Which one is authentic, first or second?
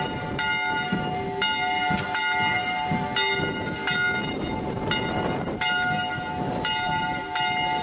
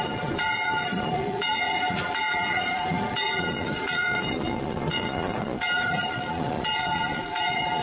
first